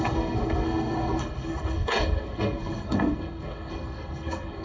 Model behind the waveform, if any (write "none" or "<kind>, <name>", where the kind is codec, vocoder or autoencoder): codec, SNAC